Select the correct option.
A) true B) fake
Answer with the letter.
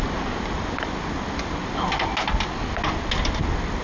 A